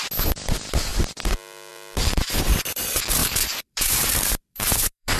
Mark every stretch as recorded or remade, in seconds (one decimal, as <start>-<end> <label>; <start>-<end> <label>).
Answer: 0.0-3.2 recorded; 3.2-5.2 remade